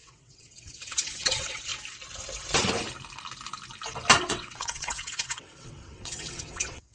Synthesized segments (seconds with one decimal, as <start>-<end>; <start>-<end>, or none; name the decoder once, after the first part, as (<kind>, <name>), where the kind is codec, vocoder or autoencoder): 0.0-1.7 (vocoder, WaveNeXt); 4.2-6.9